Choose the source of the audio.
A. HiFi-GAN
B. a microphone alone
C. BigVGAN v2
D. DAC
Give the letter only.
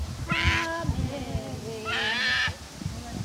B